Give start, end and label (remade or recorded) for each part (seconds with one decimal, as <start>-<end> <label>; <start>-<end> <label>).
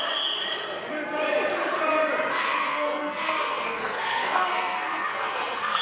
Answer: 0.0-2.3 recorded; 2.3-5.8 remade